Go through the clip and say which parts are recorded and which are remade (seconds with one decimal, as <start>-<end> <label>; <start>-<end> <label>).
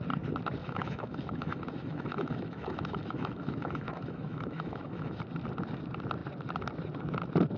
0.0-0.6 recorded; 0.6-5.2 remade; 5.2-7.6 recorded